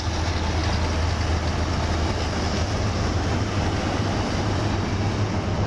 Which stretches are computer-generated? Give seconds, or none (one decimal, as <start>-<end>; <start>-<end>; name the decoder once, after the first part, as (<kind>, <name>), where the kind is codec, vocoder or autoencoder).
none